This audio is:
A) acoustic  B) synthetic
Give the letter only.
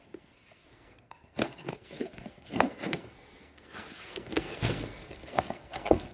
B